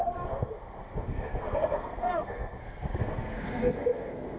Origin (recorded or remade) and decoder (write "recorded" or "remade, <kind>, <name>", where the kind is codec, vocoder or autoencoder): remade, codec, SNAC